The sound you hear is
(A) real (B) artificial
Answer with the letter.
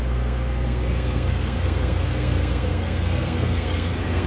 B